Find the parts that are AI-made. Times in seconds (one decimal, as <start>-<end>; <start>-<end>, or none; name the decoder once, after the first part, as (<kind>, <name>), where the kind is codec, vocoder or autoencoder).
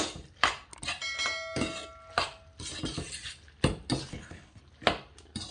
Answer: 4.1-4.6 (codec, HILCodec)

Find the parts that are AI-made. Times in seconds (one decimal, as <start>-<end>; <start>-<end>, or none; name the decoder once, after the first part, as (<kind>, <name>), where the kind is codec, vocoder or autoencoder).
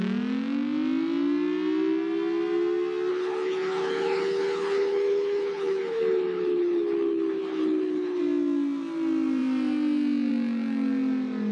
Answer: 3.1-8.2 (codec, HILCodec)